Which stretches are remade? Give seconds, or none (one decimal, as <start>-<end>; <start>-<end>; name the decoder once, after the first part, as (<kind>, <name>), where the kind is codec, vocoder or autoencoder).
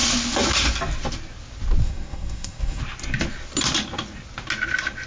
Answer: 1.8-2.8 (codec, SNAC)